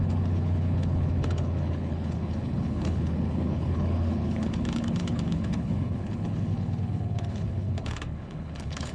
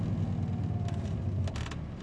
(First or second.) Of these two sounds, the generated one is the first